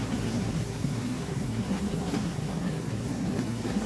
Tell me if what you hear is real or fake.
fake